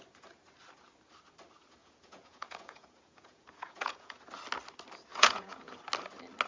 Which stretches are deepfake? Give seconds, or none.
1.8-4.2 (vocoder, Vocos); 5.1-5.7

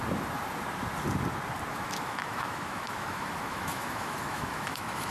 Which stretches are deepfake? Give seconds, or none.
1.7-5.1 (autoencoder, DAC-VAE)

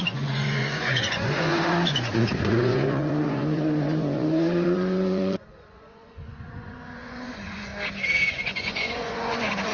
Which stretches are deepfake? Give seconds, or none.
0.0-7.7 (vocoder, Vocos); 8.3-9.7

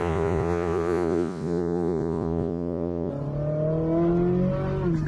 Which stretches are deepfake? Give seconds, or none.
0.0-3.1 (vocoder, Vocos)

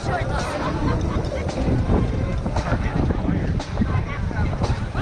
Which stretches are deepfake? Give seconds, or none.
none